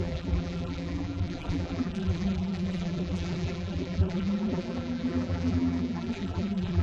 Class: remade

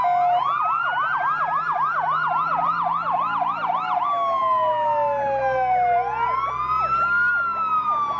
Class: recorded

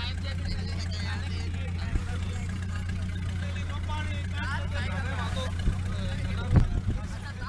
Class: recorded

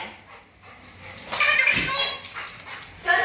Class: recorded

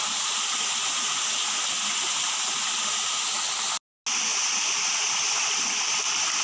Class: recorded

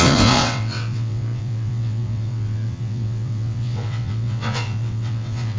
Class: remade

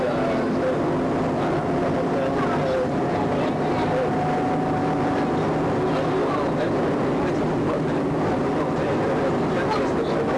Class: recorded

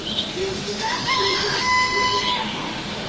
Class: remade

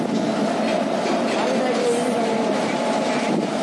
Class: recorded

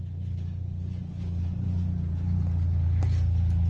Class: recorded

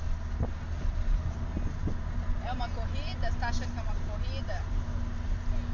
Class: recorded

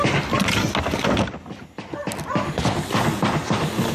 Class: recorded